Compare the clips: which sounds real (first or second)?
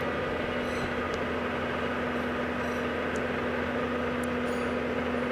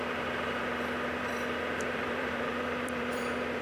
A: first